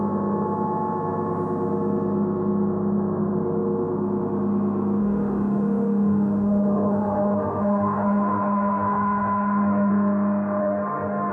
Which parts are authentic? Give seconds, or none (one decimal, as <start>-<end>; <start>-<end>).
0.0-5.0; 9.9-10.6